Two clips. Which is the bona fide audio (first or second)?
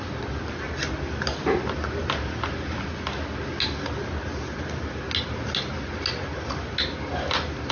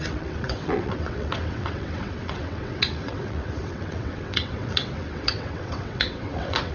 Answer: first